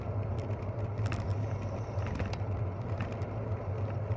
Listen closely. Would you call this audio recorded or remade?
recorded